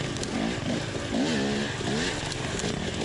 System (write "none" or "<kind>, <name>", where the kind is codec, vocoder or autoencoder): none